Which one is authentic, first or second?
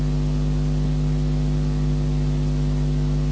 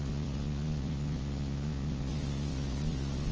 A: first